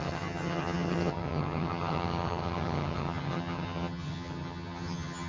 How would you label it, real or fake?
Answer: fake